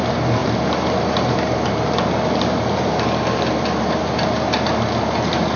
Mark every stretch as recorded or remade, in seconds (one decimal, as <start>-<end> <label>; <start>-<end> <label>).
0.0-5.6 recorded